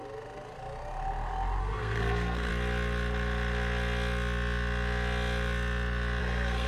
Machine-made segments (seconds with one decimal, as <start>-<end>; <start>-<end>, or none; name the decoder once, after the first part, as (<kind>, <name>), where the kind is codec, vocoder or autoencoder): 1.6-2.5 (codec, SNAC); 6.2-6.7